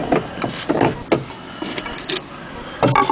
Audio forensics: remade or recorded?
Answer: recorded